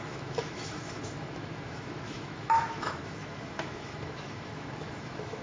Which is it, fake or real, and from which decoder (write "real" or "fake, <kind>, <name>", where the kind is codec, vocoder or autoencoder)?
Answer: fake, autoencoder, DAC-VAE